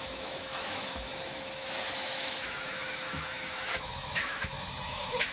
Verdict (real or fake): fake